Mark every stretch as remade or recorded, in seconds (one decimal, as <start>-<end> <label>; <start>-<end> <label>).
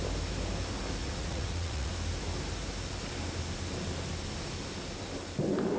0.0-1.0 recorded; 1.0-1.9 remade; 1.9-5.8 recorded